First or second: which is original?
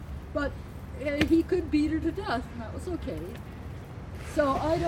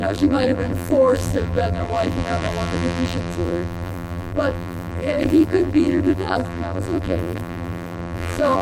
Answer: first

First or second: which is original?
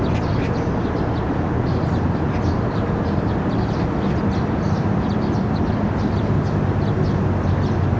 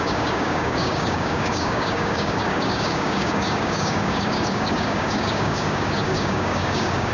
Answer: first